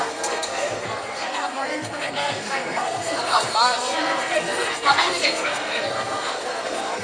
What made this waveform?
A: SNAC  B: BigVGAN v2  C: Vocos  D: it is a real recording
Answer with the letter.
A